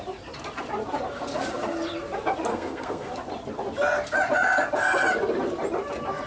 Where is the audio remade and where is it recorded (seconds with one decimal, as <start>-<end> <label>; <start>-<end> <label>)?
0.0-2.5 recorded; 2.5-3.1 remade; 3.1-6.3 recorded